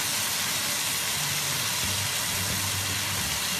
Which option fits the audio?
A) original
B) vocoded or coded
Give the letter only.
A